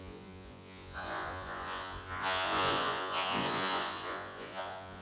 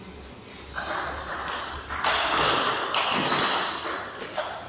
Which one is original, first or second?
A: second